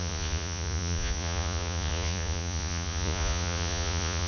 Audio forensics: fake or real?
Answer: fake